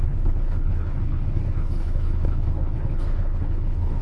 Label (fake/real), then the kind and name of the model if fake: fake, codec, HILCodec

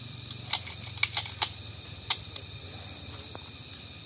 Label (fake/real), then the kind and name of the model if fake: real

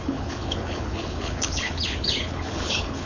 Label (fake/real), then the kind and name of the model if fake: fake, codec, HILCodec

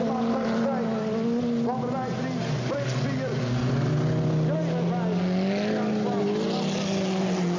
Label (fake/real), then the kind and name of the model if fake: real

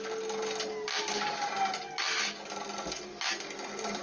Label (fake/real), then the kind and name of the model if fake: real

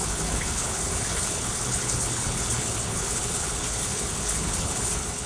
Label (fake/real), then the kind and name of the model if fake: fake, codec, HILCodec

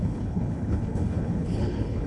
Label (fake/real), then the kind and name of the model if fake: fake, codec, HILCodec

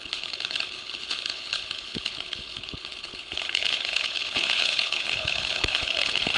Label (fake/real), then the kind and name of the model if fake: fake, codec, HILCodec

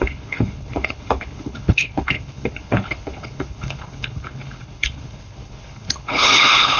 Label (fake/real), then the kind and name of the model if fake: fake, codec, HILCodec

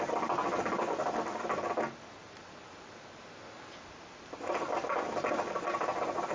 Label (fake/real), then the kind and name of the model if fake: real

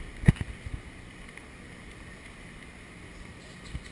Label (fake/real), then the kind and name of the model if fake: real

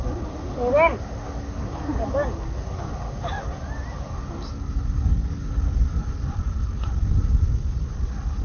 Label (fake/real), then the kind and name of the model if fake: real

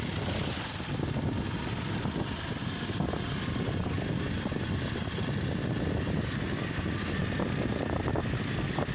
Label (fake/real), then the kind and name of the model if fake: real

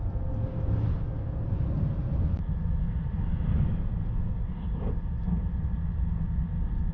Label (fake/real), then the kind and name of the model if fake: real